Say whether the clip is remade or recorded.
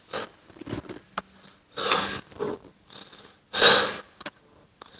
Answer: recorded